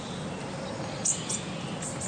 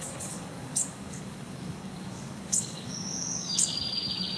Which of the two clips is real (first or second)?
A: first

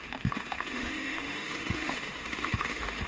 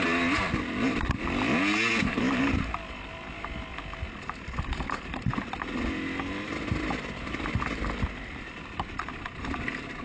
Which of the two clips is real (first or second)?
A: second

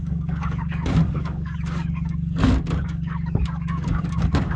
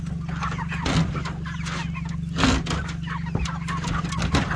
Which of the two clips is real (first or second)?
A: second